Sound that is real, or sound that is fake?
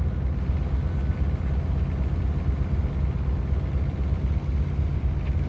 real